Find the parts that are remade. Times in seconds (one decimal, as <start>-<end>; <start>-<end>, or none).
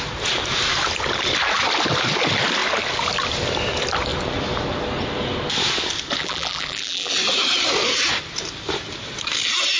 6.2-7.1